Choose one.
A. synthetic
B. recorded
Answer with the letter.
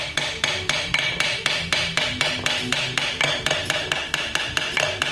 B